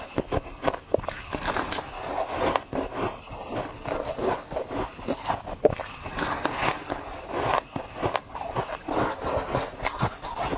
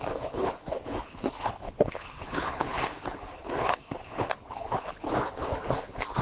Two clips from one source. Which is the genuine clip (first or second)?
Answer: first